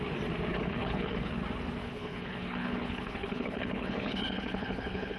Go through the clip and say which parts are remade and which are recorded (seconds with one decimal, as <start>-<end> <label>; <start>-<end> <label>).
0.0-0.5 recorded; 0.5-1.3 remade; 1.3-1.8 recorded; 1.8-5.2 remade